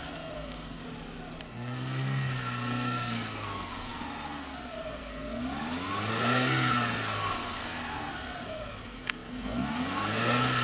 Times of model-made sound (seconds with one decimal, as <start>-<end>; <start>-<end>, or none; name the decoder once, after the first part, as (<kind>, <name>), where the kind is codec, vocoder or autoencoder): 0.0-0.8 (codec, SNAC); 1.4-5.4; 6.1-10.6